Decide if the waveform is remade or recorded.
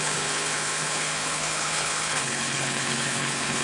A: remade